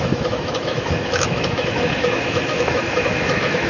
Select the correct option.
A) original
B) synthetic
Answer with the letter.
B